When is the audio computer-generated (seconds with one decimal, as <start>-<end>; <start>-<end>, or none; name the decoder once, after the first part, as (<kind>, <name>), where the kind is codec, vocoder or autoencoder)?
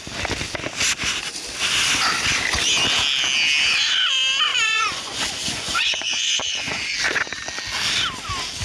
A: 4.5-6.9 (vocoder, Vocos)